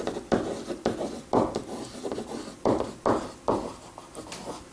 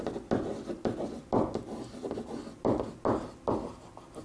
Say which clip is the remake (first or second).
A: first